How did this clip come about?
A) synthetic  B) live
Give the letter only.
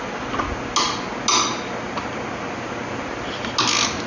B